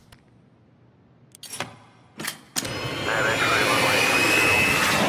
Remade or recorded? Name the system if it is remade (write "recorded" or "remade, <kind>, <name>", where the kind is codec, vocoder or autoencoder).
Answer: recorded